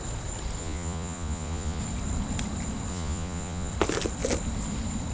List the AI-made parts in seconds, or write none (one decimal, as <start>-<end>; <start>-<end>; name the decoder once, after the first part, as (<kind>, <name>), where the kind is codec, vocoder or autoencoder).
0.6-1.8 (vocoder, Vocos); 2.9-3.7

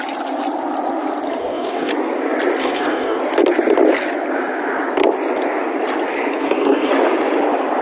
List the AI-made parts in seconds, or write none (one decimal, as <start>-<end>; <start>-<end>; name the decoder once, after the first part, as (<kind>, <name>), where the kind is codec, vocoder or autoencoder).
1.4-1.9 (codec, DAC); 2.6-3.2; 6.4-6.9